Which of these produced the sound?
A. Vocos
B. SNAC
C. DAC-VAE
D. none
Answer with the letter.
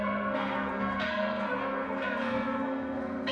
B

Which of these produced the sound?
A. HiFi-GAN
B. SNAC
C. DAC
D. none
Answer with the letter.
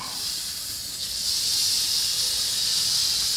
D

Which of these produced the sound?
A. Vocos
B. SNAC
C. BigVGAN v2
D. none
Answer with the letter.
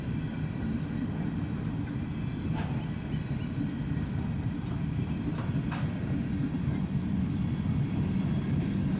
D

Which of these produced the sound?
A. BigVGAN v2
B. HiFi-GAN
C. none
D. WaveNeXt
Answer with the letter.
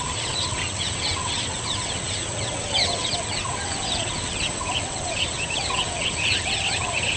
D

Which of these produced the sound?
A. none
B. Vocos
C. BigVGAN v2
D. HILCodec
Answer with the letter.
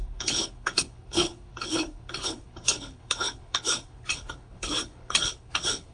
D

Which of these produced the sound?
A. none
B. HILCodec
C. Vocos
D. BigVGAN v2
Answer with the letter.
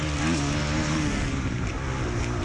A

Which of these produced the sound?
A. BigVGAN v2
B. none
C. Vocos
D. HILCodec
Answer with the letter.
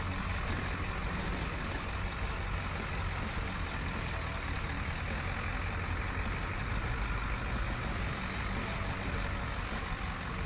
B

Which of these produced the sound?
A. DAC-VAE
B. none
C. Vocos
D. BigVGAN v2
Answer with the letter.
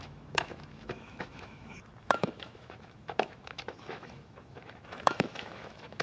A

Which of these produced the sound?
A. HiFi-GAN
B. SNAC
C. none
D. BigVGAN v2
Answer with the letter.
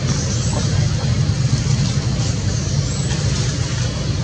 C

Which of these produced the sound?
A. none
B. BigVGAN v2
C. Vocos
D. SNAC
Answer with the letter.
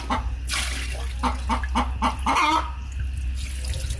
A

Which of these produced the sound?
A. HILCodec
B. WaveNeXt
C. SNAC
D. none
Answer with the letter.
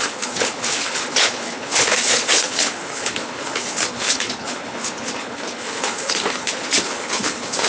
A